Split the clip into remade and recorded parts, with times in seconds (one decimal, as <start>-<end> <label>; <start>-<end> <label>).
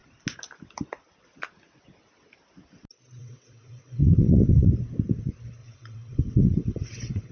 0.0-3.2 recorded; 3.2-4.7 remade; 4.7-5.6 recorded; 5.6-7.3 remade